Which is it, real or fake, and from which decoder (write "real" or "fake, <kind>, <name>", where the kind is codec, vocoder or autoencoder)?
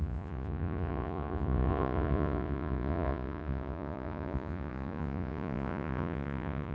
fake, vocoder, Vocos